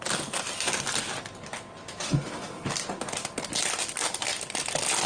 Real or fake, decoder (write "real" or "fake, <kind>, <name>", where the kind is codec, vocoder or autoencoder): real